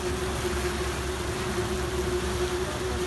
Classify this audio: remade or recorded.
recorded